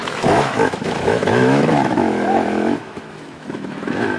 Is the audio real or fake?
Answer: fake